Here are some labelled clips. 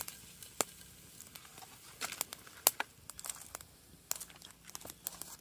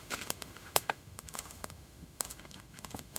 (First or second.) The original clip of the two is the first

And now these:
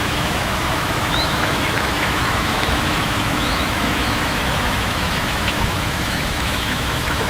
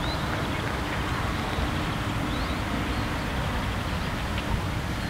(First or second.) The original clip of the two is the second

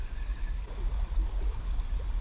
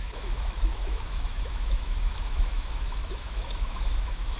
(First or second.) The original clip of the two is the first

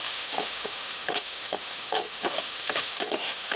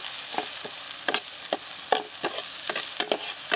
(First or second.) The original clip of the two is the second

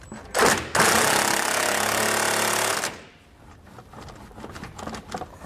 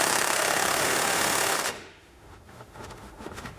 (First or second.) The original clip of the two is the first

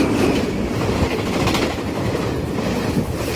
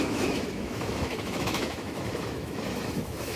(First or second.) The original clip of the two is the first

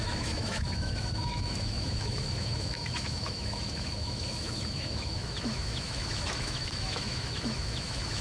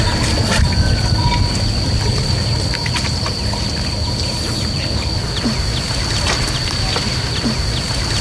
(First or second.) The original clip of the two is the second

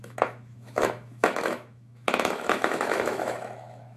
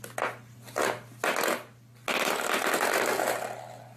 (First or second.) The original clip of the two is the second